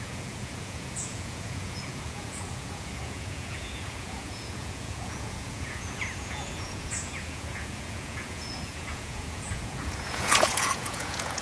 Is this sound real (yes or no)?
no